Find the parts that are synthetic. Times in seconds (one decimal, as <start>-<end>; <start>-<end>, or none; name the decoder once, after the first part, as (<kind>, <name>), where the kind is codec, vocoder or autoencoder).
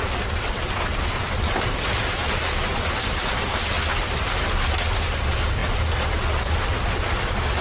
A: none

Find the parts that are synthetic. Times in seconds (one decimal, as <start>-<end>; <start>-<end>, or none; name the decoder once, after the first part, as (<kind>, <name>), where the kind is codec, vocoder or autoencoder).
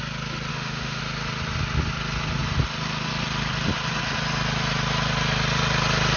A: 0.5-1.0 (autoencoder, DAC-VAE)